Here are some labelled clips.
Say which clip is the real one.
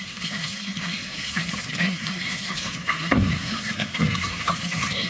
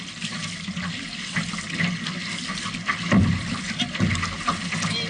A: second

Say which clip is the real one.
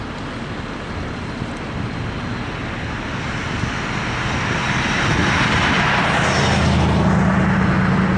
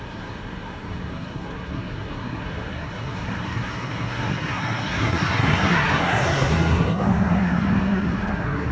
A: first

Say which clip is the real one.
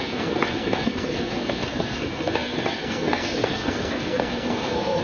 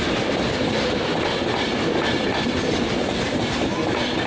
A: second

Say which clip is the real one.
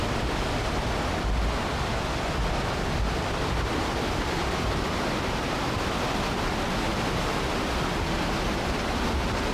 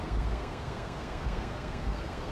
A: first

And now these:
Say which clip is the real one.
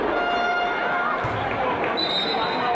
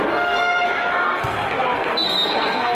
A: first